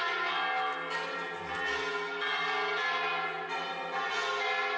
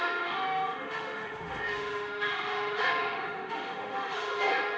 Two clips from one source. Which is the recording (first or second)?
first